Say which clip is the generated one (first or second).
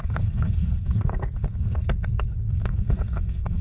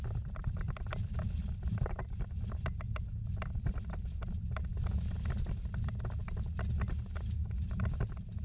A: first